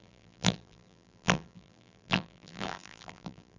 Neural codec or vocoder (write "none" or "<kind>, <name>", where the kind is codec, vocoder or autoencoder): vocoder, BigVGAN v2